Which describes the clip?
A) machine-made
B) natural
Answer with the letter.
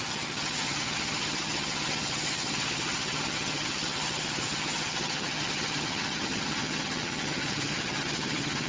A